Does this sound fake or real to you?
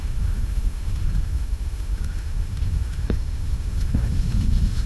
fake